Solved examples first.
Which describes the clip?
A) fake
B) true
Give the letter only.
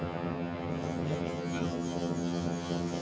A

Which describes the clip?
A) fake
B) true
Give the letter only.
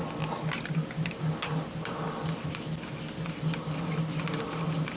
B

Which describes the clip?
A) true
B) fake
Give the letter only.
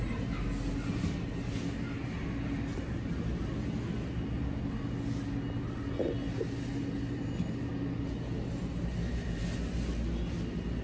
A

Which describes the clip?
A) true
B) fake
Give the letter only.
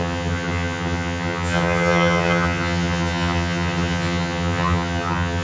B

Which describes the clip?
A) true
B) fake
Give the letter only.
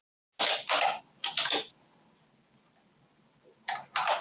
A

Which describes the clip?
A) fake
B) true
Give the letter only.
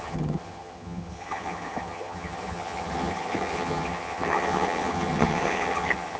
A